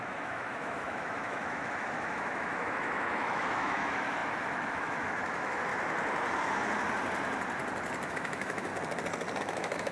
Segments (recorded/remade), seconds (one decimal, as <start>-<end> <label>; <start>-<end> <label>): 0.0-5.7 remade; 5.7-8.1 recorded; 8.1-8.7 remade; 8.7-9.4 recorded; 9.4-9.9 remade